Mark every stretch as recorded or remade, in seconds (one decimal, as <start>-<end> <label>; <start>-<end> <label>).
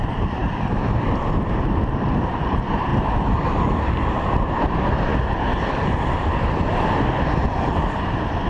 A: 0.0-5.1 remade; 5.1-6.0 recorded; 6.0-8.5 remade